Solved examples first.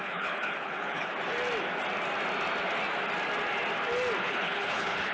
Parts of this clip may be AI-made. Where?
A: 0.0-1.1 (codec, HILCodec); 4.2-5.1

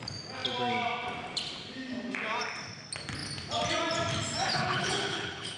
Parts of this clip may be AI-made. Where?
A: 4.5-5.6 (codec, HILCodec)